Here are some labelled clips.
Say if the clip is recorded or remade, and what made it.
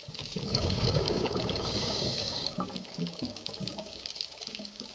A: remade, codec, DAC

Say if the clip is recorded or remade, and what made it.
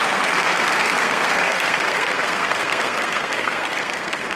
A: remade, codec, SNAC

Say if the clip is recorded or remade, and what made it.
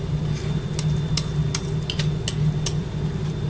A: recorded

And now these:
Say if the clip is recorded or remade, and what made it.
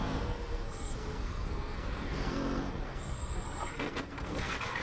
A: remade, codec, SNAC